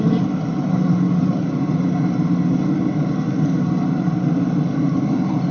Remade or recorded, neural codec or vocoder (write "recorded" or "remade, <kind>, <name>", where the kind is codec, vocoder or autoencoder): recorded